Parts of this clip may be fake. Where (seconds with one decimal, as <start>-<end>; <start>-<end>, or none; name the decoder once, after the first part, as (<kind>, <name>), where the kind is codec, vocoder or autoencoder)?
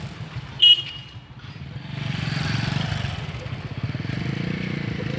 none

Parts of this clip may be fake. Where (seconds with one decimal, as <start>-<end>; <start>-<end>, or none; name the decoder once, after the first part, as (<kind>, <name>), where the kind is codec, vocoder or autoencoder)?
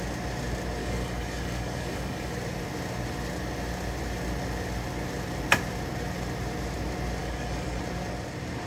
0.8-2.3 (codec, DAC); 7.2-7.8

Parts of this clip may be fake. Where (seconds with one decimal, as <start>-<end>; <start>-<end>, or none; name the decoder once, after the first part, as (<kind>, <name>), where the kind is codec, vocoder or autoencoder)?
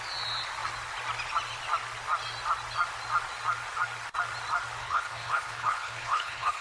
4.8-6.6 (codec, HILCodec)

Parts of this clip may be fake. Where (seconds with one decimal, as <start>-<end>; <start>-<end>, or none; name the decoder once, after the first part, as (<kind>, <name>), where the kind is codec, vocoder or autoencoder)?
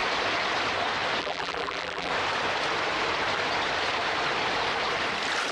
1.2-2.1 (vocoder, BigVGAN v2)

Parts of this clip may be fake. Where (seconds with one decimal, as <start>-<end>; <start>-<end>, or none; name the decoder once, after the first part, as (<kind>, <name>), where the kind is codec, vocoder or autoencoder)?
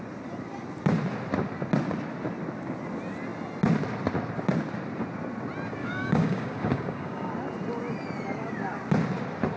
5.8-7.3 (codec, DAC)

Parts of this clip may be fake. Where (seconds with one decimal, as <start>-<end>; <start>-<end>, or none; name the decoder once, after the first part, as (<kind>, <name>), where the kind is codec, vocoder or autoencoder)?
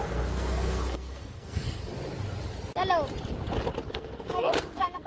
0.0-1.9 (codec, SNAC); 3.9-5.1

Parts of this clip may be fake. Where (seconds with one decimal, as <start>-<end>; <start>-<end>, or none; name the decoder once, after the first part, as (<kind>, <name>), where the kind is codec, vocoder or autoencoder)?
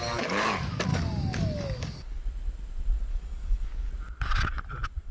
0.9-2.2 (codec, DAC); 3.1-3.9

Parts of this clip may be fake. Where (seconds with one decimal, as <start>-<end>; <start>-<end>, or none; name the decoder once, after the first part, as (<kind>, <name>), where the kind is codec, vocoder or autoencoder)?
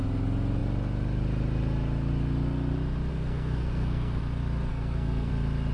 3.1-4.2 (codec, SNAC); 4.7-5.3